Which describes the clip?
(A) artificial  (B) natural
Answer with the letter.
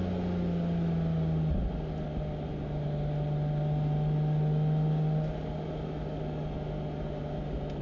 B